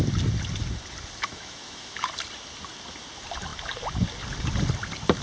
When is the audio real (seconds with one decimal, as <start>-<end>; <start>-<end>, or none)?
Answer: 0.0-1.3; 2.1-5.2